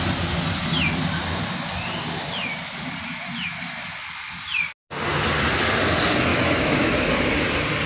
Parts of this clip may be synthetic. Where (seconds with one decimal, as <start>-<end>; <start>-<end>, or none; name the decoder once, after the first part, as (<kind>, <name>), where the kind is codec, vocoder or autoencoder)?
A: 6.3-7.3 (autoencoder, DAC-VAE)